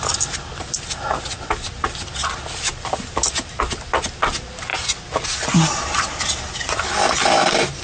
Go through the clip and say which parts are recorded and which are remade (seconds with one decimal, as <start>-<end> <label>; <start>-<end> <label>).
0.0-7.8 recorded